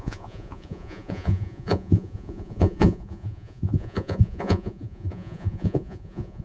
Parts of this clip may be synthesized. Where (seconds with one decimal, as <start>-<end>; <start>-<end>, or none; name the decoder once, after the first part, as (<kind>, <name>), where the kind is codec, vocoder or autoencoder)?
0.0-6.4 (vocoder, Vocos)